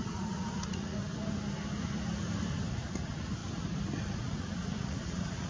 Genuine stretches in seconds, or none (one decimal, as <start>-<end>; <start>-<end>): 1.0-2.7; 3.4-4.1